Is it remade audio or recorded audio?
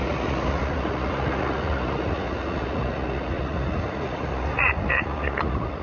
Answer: remade